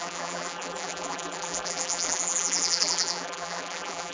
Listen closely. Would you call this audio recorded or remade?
remade